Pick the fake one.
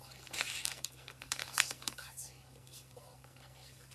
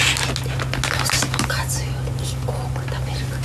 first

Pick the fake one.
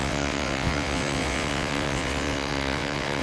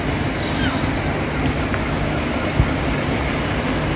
first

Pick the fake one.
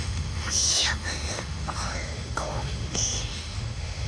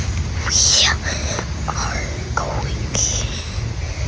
first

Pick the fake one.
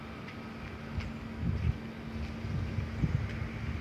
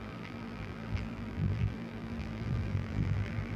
second